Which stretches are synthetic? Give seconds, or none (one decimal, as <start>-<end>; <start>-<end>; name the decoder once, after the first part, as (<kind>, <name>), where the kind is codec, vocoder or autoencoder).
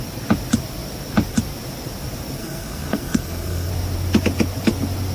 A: 2.4-3.7 (codec, SNAC)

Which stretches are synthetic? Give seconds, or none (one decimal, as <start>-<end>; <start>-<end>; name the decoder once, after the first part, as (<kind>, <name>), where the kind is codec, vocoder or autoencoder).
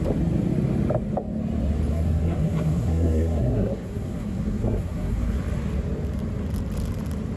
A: 1.9-5.4 (codec, SNAC)